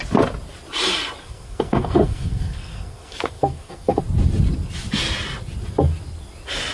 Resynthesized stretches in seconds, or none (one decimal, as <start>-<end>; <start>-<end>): 1.2-4.0